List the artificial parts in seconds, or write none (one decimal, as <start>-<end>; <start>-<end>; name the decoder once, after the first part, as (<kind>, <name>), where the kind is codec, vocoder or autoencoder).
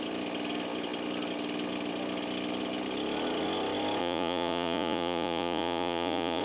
4.0-6.4 (vocoder, Vocos)